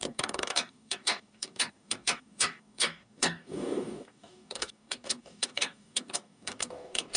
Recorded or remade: remade